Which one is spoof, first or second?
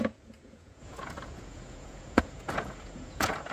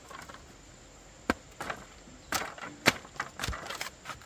first